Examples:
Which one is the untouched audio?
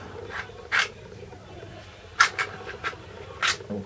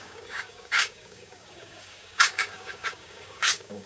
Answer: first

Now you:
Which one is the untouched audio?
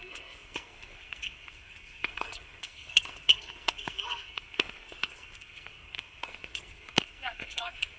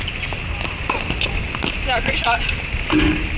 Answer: second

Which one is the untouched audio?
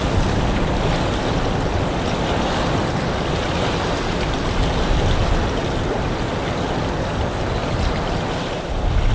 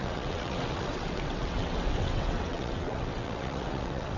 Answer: first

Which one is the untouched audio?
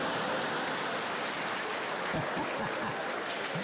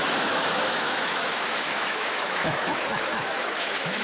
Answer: first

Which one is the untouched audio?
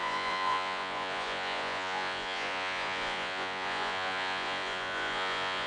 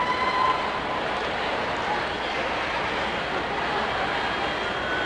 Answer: second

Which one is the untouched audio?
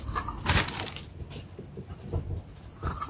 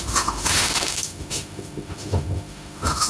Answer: first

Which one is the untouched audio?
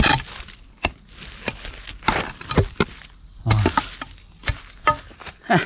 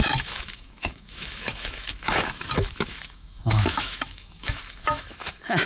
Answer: first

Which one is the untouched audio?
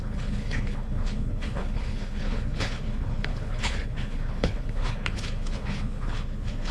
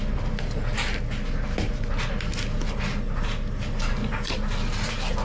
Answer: second